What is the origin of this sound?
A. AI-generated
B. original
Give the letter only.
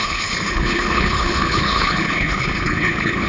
A